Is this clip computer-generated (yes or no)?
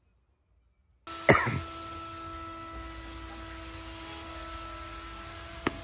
no